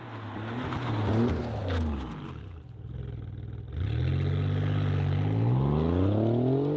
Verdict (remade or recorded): recorded